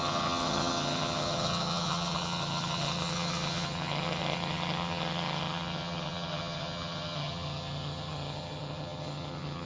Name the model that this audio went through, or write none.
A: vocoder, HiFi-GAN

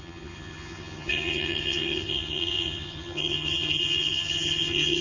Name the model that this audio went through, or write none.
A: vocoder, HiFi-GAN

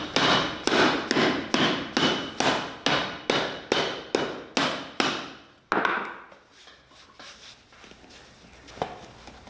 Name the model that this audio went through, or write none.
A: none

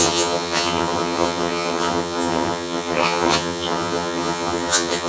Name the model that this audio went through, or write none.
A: vocoder, HiFi-GAN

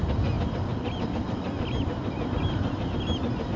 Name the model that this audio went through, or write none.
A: none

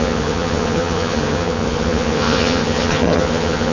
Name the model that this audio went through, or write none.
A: vocoder, HiFi-GAN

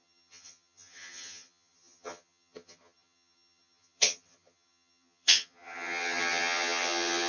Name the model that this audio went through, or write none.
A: vocoder, HiFi-GAN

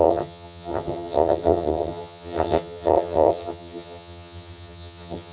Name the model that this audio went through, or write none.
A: vocoder, HiFi-GAN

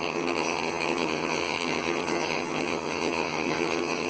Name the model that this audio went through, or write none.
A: vocoder, HiFi-GAN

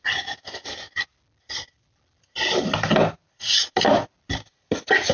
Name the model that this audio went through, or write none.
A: none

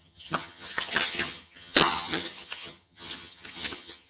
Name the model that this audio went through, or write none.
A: vocoder, HiFi-GAN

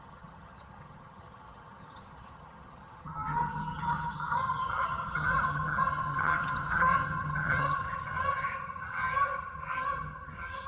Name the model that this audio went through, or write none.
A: vocoder, HiFi-GAN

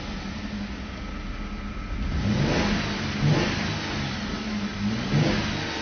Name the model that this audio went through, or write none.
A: none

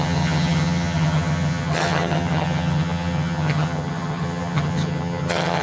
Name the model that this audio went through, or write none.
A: vocoder, HiFi-GAN